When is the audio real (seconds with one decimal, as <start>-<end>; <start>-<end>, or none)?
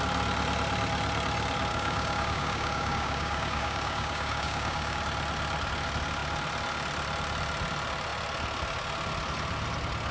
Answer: 0.0-1.7; 5.0-10.1